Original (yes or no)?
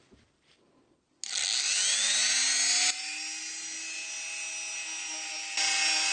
yes